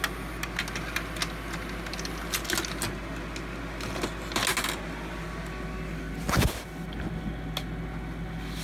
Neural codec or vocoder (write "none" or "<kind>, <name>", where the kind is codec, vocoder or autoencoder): none